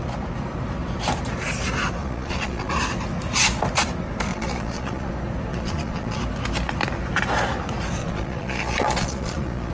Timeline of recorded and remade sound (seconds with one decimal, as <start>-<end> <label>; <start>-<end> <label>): 0.0-2.0 recorded; 2.0-2.8 remade; 2.8-4.3 recorded; 4.3-5.1 remade; 5.1-5.5 recorded; 5.5-6.2 remade; 6.2-8.0 recorded; 8.0-9.7 remade